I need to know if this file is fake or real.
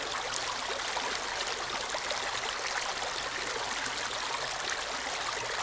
real